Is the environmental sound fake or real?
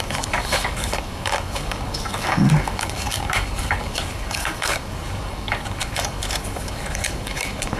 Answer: fake